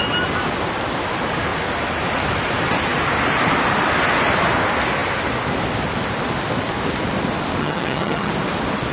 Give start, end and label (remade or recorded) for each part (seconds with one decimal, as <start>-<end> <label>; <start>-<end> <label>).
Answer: 0.0-7.6 recorded; 7.6-8.3 remade; 8.3-8.9 recorded